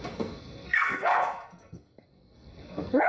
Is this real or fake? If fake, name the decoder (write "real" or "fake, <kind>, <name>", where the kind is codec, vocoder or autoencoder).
fake, codec, SNAC